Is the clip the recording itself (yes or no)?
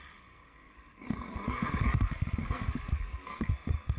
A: no